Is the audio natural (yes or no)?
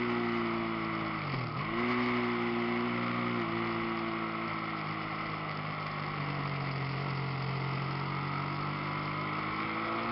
yes